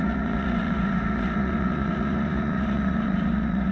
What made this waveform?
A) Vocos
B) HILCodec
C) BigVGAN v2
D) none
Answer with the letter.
A